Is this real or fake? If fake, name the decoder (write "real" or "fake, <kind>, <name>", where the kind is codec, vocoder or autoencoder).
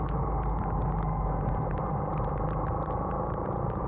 real